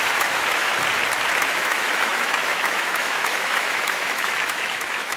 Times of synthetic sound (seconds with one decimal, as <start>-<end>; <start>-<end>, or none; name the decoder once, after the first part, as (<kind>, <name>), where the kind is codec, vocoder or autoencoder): 0.0-0.7 (autoencoder, DAC-VAE); 1.4-5.2